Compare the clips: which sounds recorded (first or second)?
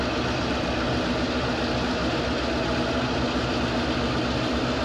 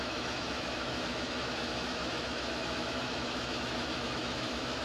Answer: first